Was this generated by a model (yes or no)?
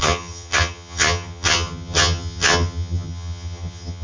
yes